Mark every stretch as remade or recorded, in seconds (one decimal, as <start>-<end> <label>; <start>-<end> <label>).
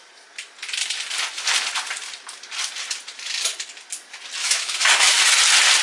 0.0-4.4 recorded; 4.4-5.2 remade; 5.2-5.8 recorded